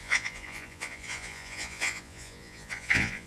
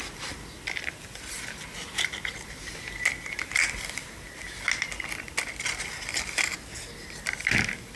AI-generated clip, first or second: first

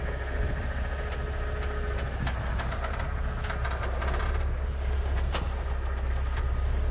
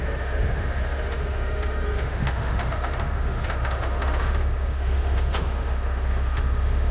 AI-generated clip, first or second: second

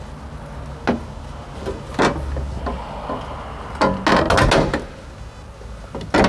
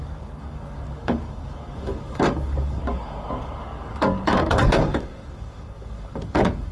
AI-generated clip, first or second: second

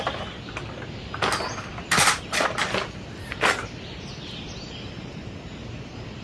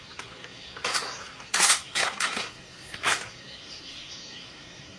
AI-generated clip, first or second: second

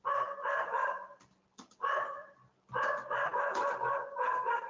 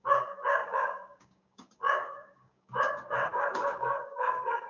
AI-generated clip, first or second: second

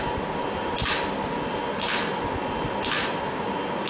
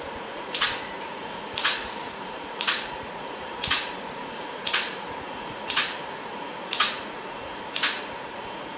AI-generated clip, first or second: second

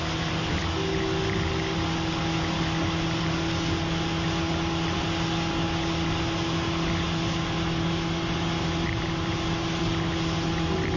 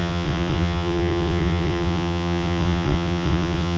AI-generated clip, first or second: second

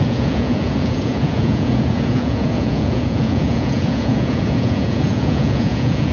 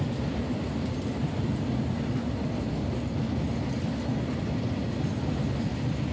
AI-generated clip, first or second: first